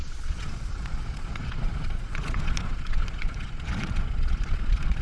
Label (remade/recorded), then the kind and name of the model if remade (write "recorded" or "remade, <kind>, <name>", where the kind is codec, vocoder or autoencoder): remade, vocoder, Vocos